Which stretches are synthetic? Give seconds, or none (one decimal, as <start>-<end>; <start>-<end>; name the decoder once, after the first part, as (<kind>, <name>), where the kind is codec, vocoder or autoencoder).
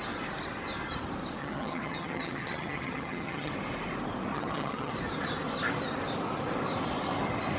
1.4-3.5 (vocoder, HiFi-GAN); 4.3-4.9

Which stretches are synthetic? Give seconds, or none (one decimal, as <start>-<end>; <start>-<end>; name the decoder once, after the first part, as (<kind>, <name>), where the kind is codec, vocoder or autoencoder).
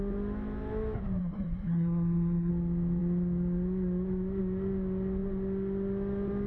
1.2-2.5 (codec, SNAC)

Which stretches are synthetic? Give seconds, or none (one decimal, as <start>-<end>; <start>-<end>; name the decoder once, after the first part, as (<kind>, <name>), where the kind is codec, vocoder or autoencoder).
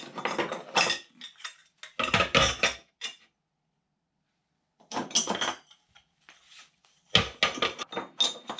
none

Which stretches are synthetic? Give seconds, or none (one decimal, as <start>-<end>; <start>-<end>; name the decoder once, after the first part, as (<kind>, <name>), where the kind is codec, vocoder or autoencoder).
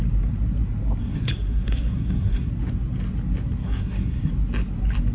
1.0-2.5 (codec, SNAC); 3.6-4.3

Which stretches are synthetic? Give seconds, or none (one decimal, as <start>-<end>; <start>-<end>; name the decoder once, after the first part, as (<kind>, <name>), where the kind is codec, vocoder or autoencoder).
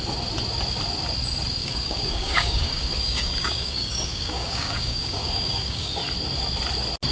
1.6-5.9 (codec, DAC)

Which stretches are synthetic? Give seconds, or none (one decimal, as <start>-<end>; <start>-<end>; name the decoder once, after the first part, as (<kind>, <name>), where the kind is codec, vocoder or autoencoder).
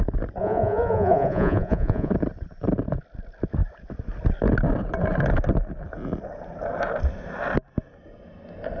0.4-2.1 (vocoder, Vocos)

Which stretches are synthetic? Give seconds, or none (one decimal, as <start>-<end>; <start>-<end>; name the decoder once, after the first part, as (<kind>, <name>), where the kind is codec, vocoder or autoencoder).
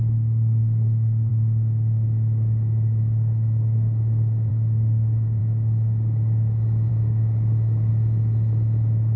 0.0-7.9 (codec, DAC)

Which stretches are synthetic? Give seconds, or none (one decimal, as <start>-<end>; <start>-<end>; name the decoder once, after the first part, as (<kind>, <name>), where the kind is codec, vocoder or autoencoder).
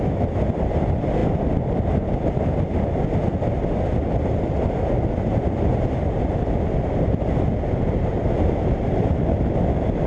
none